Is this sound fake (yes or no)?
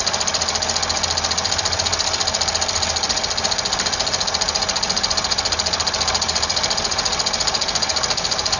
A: no